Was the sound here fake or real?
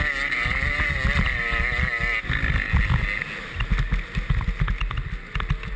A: real